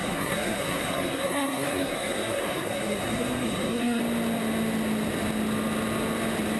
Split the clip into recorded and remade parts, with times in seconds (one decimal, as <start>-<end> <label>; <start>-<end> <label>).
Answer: 0.0-4.0 remade; 4.0-6.6 recorded